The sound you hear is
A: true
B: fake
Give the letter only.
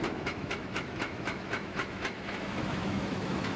B